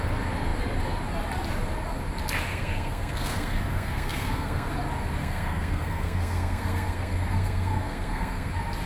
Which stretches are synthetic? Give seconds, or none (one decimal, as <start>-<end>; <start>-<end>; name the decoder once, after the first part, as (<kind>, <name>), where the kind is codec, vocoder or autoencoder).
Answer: 2.5-4.7 (codec, SNAC); 5.2-8.5